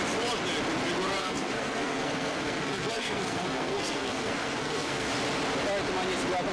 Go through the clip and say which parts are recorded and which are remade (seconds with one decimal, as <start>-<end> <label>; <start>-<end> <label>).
0.0-1.2 recorded; 1.2-5.1 remade; 5.1-6.5 recorded